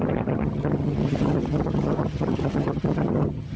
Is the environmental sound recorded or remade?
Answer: remade